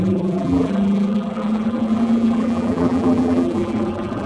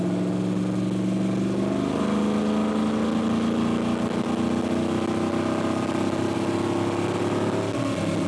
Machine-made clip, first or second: first